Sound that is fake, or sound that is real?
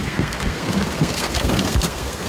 fake